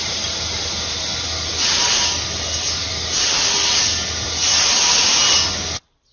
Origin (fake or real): real